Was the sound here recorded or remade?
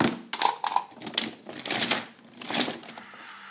recorded